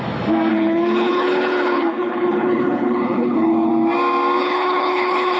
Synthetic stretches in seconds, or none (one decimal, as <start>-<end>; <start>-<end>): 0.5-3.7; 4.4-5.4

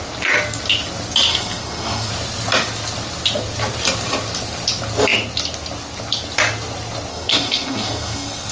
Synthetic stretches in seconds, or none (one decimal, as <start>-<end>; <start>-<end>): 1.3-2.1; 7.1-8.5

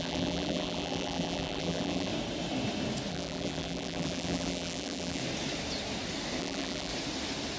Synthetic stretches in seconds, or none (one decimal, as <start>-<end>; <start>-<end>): 0.0-2.1; 3.1-5.2; 6.4-6.9

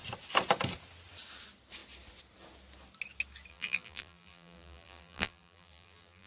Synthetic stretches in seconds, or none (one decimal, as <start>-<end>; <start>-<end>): 3.5-6.3

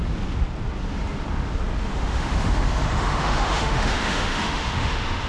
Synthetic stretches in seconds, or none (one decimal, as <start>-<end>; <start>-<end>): 1.9-5.3

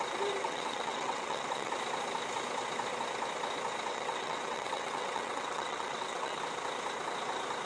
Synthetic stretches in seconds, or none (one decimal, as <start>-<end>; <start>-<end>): 0.4-1.7; 3.9-6.4

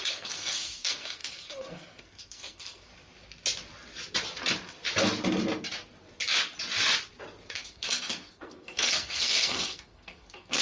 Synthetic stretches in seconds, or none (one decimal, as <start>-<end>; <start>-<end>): 0.0-2.9; 7.5-10.6